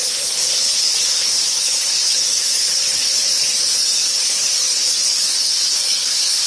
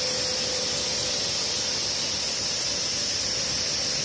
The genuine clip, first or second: second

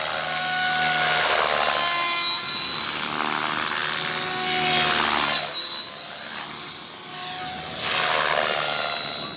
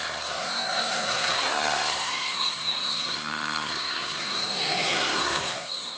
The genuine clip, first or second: first